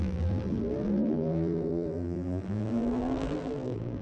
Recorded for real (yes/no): no